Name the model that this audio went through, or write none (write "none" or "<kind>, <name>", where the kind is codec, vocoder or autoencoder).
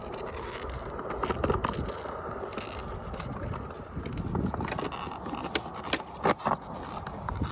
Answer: none